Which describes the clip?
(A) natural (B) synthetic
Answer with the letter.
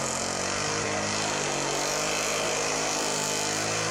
A